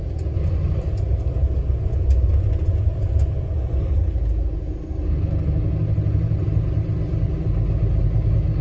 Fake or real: real